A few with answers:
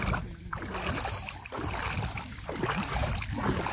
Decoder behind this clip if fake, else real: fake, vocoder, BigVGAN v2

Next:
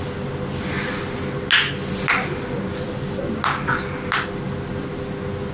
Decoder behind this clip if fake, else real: real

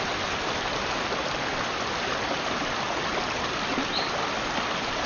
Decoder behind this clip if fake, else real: real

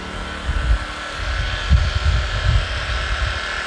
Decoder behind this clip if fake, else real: real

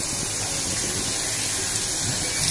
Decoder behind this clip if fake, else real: real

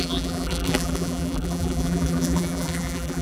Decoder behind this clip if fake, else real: fake, vocoder, BigVGAN v2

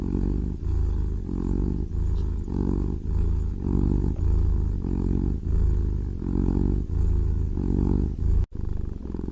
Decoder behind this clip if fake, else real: real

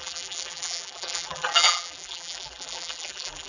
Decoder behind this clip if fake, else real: fake, vocoder, BigVGAN v2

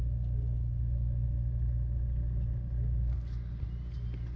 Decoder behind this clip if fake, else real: real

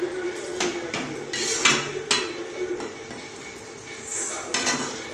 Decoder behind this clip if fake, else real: real